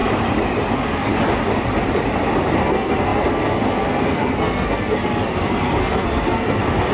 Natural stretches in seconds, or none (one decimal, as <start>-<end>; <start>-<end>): 0.0-0.7; 1.1-2.6